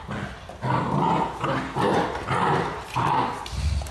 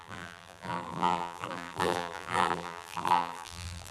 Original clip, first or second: first